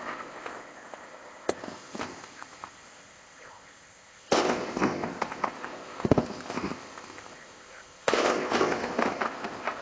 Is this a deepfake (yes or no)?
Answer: yes